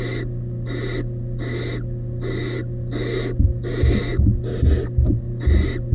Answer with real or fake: real